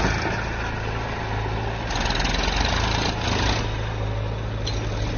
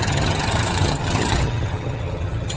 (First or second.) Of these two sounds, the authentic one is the first